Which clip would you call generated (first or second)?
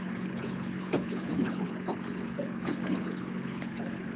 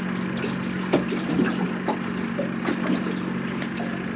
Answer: first